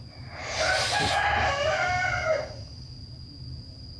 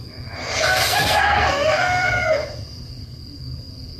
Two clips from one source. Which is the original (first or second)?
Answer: first